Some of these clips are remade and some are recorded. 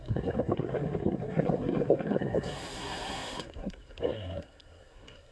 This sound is remade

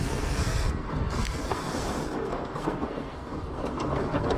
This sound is remade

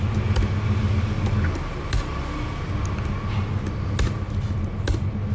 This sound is recorded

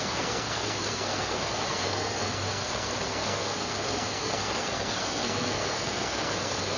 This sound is remade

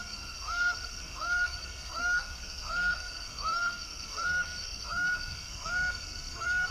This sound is remade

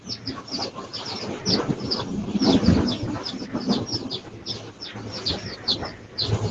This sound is recorded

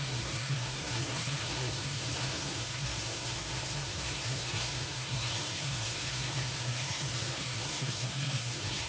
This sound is remade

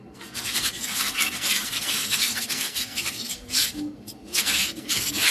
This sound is remade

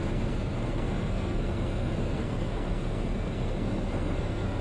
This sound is remade